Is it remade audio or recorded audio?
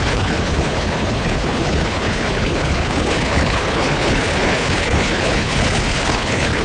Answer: remade